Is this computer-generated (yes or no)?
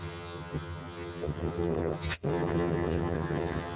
yes